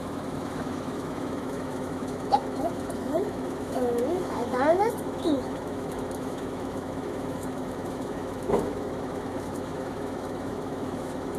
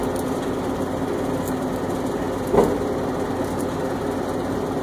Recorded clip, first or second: second